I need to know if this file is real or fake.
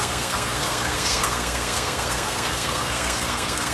fake